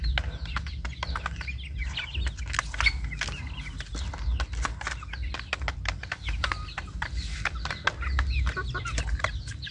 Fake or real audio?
real